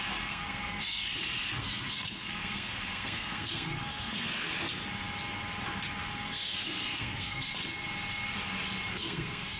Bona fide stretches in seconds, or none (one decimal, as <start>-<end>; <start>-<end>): 1.0-1.6; 4.5-6.1; 7.6-8.9